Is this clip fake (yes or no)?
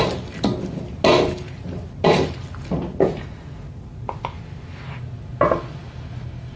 no